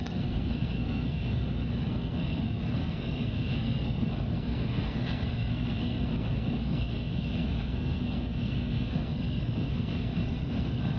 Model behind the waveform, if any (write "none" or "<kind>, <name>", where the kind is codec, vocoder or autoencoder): codec, SNAC